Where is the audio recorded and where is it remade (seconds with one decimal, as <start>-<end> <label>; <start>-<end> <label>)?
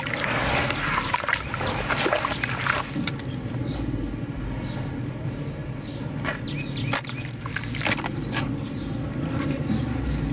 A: 0.0-10.3 recorded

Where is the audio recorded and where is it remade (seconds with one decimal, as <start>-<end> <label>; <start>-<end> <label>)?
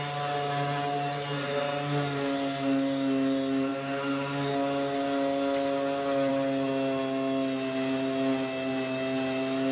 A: 0.0-9.7 recorded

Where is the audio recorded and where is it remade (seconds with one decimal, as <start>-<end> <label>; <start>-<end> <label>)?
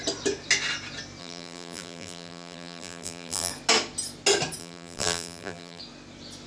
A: 0.0-1.2 recorded; 1.2-3.5 remade; 3.5-4.6 recorded; 4.6-5.8 remade; 5.8-6.5 recorded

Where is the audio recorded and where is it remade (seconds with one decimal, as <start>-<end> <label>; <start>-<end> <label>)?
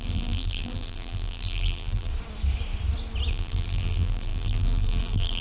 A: 0.0-2.1 remade; 2.1-3.3 recorded; 3.3-5.4 remade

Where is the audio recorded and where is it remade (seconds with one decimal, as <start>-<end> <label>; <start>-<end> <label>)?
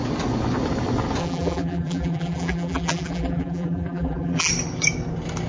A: 0.0-1.2 recorded; 1.2-4.5 remade; 4.5-5.5 recorded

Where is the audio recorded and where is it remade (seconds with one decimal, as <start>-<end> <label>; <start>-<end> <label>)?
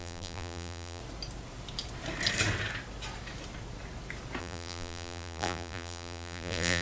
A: 0.0-1.0 remade; 1.0-4.4 recorded; 4.4-6.8 remade